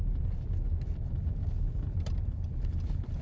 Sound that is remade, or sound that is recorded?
recorded